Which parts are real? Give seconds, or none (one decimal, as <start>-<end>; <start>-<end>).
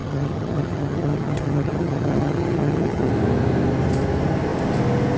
3.1-5.2